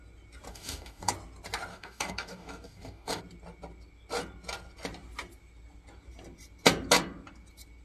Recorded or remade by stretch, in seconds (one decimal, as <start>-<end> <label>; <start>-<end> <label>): 0.0-0.5 recorded; 0.5-1.1 remade; 1.1-1.7 recorded; 1.7-3.2 remade; 3.2-7.8 recorded